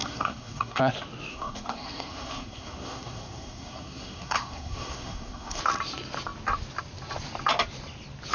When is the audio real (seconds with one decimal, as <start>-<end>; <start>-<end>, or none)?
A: 0.8-1.3; 5.6-8.3